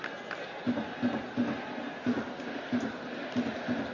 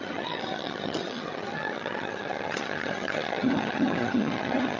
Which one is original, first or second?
first